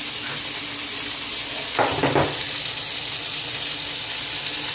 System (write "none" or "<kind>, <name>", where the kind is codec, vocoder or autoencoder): none